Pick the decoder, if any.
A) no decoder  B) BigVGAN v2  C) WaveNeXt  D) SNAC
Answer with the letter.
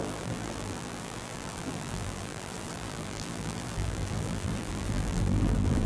B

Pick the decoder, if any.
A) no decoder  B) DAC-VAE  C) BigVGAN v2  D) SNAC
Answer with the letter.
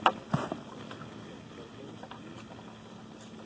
A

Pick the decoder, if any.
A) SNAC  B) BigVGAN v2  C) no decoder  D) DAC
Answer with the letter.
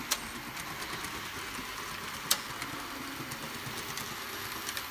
C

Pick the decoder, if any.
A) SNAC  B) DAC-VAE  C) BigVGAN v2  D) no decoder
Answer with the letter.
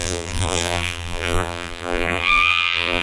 C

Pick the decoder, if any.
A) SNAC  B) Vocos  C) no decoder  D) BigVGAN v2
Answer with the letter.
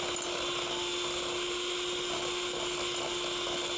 C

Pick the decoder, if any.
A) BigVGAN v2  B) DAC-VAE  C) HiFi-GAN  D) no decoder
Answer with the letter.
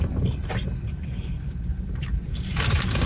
D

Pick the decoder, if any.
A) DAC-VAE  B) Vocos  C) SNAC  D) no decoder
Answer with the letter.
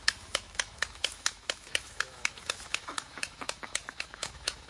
A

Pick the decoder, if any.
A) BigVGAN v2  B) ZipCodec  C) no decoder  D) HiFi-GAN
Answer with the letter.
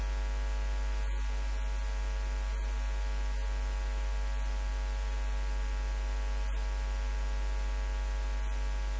C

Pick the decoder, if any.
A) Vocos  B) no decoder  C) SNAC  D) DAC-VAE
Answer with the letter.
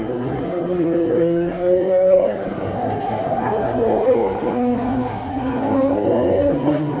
C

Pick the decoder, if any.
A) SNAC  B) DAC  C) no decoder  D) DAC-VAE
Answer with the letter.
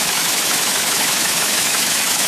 D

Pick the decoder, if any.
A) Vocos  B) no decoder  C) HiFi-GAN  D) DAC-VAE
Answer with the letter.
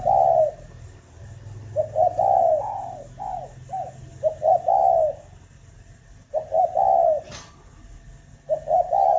B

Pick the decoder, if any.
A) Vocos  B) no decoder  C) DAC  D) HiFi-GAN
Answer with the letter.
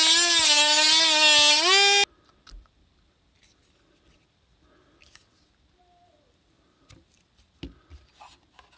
B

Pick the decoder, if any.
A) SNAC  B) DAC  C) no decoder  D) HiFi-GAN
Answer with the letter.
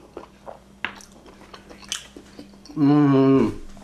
C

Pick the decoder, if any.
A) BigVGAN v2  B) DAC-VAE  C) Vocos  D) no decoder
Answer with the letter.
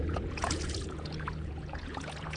C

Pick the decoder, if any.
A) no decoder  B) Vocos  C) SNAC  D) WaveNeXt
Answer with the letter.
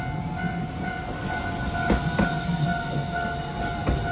A